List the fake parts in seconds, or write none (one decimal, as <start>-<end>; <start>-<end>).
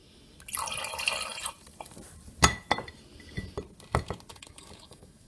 4.3-5.3